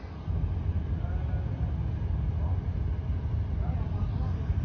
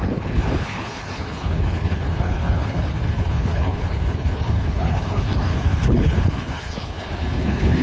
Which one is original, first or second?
first